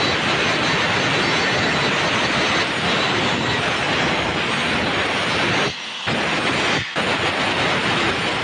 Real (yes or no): yes